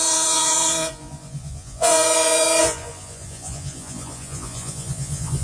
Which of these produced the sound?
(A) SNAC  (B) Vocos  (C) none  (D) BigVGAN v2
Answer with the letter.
B